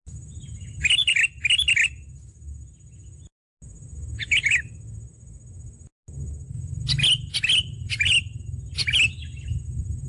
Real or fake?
real